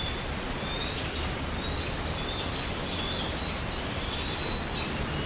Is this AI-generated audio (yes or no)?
no